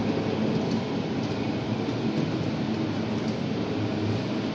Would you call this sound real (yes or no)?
yes